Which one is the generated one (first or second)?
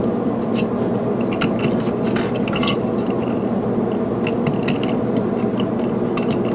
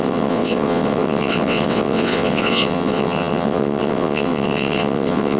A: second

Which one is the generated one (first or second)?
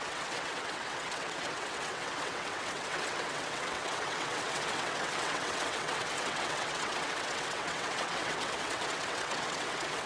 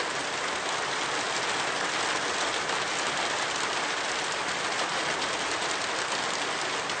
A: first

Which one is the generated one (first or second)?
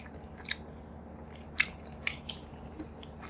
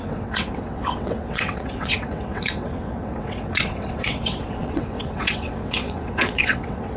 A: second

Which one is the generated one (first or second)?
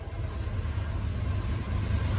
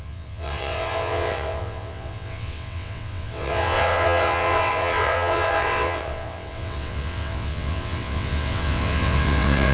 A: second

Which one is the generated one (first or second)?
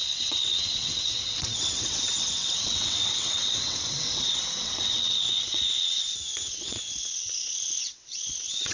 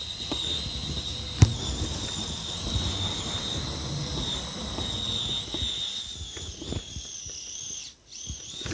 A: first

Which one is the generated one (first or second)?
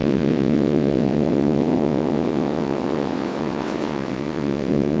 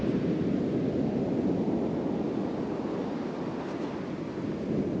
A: first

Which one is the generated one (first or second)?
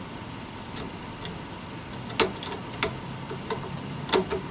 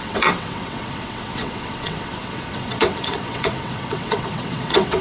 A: second